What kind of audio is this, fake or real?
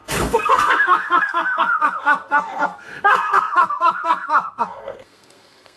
fake